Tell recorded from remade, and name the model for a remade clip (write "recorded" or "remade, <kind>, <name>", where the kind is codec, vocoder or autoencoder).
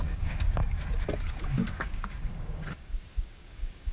remade, codec, DAC